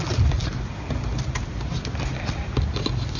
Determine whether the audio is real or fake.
real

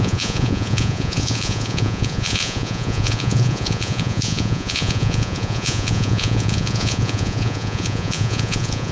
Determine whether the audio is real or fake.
fake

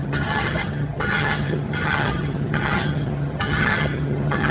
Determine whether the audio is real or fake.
fake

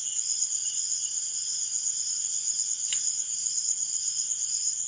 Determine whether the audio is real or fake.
fake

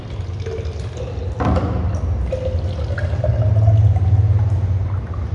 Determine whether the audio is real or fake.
real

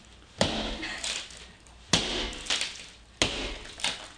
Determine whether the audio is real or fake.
real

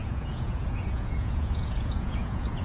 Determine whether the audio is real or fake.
fake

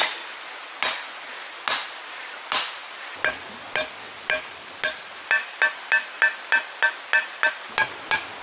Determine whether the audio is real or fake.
real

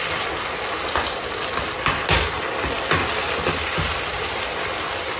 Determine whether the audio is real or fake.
real